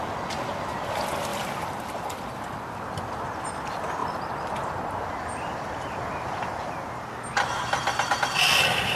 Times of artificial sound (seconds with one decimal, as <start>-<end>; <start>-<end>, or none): 1.3-2.0; 4.0-4.7